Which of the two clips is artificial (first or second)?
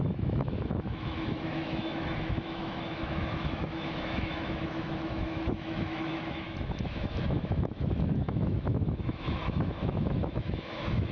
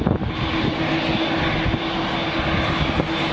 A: first